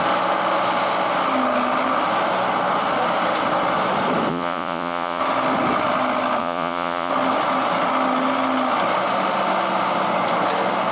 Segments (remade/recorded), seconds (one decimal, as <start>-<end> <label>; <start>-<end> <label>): 0.0-4.3 recorded; 4.3-5.2 remade; 5.2-6.4 recorded; 6.4-7.1 remade; 7.1-10.9 recorded